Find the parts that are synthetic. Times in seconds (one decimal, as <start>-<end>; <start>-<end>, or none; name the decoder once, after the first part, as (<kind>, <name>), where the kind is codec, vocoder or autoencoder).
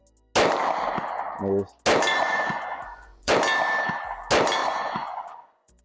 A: 2.1-3.3 (vocoder, Vocos); 4.6-5.8